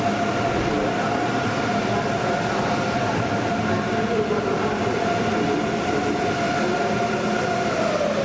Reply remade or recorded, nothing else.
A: recorded